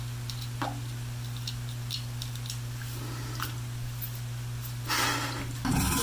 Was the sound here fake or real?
real